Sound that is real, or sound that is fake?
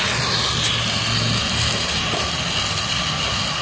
real